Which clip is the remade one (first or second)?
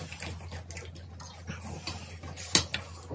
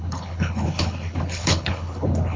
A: second